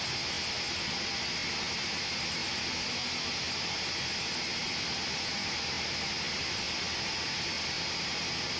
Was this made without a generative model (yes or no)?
yes